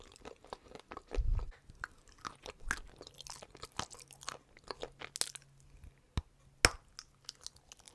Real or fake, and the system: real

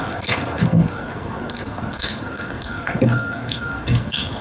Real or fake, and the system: fake, codec, SNAC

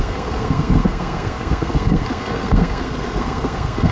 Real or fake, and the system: fake, codec, SNAC